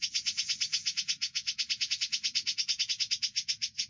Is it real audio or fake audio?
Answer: fake